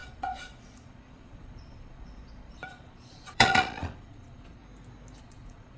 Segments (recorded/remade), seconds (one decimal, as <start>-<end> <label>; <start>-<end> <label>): 0.0-4.6 remade; 4.6-5.2 recorded; 5.2-5.8 remade